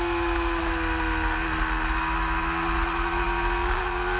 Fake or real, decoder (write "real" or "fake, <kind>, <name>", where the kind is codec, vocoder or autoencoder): real